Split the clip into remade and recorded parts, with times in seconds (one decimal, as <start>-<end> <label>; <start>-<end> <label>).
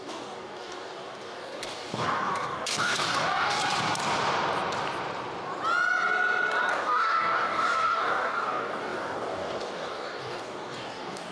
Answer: 0.0-3.6 remade; 3.6-6.7 recorded; 6.7-11.3 remade